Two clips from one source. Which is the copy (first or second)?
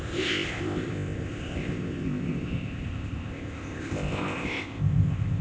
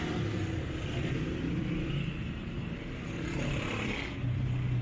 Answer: first